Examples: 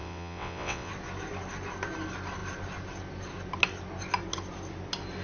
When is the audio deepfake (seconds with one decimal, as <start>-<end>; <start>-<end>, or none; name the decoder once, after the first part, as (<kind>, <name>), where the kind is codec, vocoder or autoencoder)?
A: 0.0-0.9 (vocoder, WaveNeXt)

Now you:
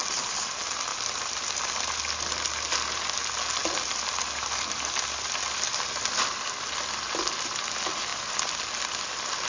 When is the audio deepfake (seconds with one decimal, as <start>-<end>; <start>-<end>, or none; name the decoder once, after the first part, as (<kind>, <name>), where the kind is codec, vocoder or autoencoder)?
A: 0.0-0.5 (vocoder, BigVGAN v2); 0.9-1.8; 3.6-7.6; 8.1-9.5

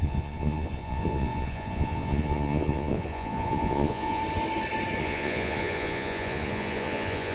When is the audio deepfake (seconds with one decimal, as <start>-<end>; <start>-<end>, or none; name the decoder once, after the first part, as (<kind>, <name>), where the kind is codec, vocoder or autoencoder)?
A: 0.0-4.2 (vocoder, Vocos); 5.0-7.3

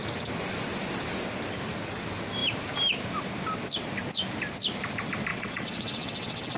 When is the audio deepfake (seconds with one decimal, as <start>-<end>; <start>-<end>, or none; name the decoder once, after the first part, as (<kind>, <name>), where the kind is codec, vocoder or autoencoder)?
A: 5.3-6.6 (vocoder, WaveNeXt)

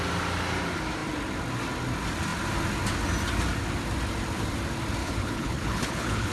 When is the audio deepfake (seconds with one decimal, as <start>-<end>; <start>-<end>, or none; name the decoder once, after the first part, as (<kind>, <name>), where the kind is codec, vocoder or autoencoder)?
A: 5.0-6.3 (codec, HILCodec)

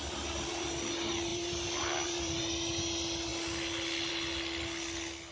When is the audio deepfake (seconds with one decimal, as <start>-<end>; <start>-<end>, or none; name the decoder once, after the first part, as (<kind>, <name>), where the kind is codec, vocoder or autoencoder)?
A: 1.3-2.5 (vocoder, BigVGAN v2)

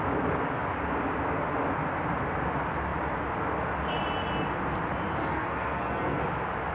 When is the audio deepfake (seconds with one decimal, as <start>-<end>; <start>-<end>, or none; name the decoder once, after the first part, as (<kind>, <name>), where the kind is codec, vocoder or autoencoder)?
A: 5.2-6.2 (codec, SNAC)